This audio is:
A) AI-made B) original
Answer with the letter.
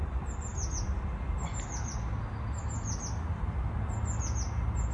B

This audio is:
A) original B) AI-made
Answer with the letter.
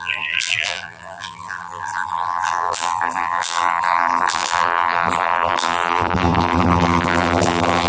B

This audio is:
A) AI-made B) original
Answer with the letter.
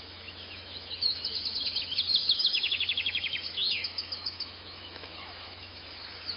A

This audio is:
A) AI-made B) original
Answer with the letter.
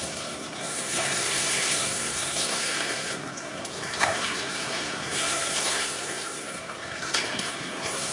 A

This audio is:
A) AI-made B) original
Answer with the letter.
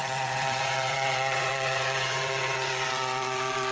A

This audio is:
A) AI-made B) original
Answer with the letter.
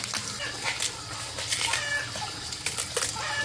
B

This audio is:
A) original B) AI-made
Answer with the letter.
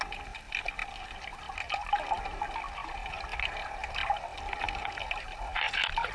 A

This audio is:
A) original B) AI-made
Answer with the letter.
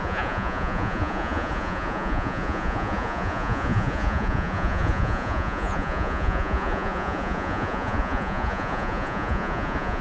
B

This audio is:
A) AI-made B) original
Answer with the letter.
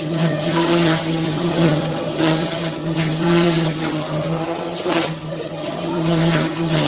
A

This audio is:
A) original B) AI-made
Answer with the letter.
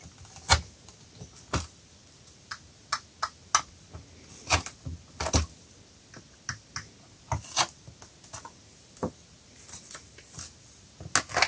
A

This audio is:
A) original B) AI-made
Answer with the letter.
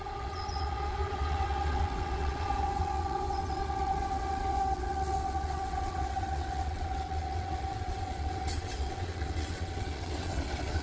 B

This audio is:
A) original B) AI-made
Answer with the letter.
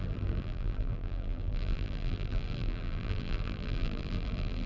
B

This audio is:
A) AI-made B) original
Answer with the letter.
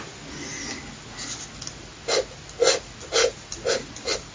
B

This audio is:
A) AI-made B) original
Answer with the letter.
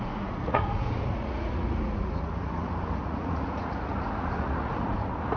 A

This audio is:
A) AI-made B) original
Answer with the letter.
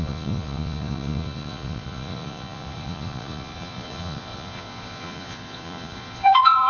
A